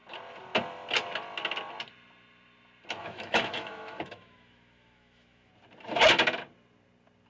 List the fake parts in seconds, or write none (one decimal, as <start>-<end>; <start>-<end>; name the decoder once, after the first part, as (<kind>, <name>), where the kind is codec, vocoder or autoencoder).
3.0-5.5 (autoencoder, DAC-VAE)